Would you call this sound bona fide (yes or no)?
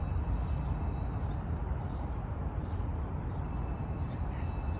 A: yes